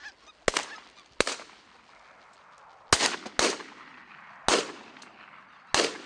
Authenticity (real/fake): real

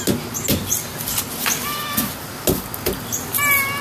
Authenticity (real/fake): real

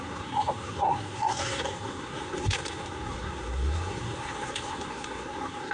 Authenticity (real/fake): fake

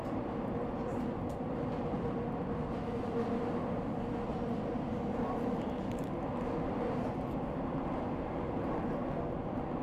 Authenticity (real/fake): real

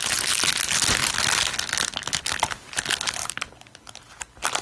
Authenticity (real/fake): real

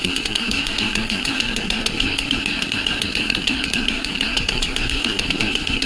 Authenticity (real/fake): fake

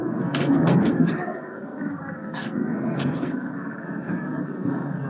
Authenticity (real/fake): fake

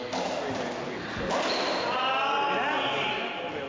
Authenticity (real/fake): real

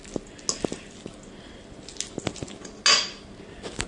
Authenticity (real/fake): real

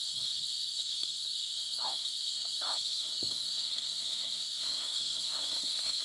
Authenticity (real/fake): fake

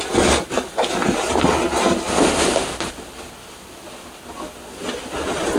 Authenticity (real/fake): real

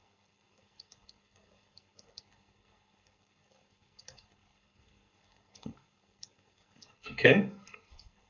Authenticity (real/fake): fake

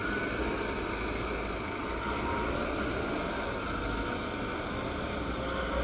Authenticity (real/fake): real